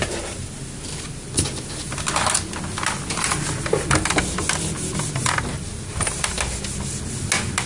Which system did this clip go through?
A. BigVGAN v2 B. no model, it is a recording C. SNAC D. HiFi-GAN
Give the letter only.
B